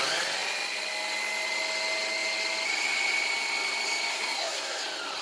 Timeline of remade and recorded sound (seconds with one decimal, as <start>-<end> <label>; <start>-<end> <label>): 0.0-4.1 recorded; 4.1-4.8 remade; 4.8-5.2 recorded